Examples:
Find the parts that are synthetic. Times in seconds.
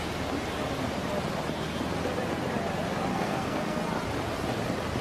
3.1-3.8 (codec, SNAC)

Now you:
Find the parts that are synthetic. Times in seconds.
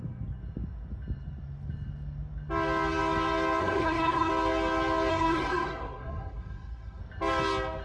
3.6-4.3 (codec, SNAC); 5.1-7.0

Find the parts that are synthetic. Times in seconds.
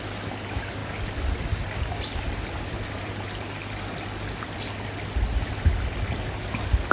none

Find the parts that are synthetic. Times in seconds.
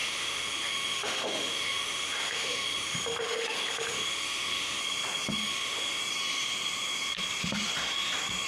0.0-4.8 (autoencoder, DAC-VAE); 5.4-6.0